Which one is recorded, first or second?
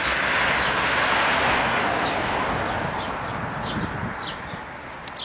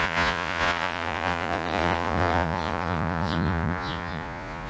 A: first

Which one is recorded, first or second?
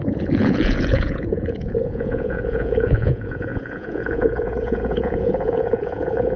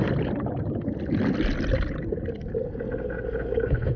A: second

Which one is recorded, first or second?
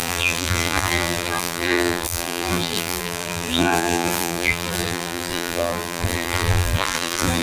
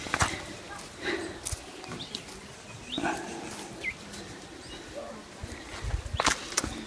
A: second